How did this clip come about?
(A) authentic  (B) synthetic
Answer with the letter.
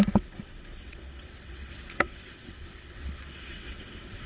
B